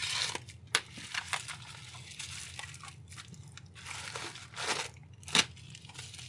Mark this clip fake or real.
real